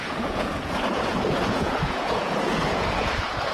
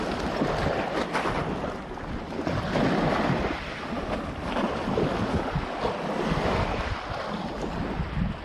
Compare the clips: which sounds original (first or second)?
second